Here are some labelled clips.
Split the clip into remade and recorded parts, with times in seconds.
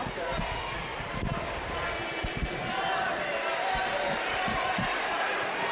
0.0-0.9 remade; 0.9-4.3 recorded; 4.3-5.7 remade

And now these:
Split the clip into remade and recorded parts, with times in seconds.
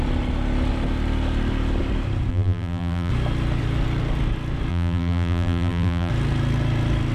0.0-2.3 recorded; 2.3-3.1 remade; 3.1-4.7 recorded; 4.7-6.1 remade; 6.1-7.1 recorded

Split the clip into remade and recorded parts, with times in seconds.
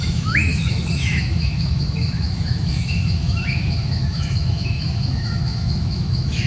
0.0-6.5 remade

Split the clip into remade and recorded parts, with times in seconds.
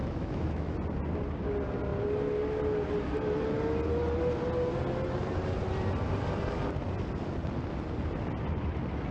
0.0-0.7 remade; 0.7-9.1 recorded